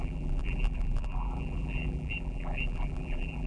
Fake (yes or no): yes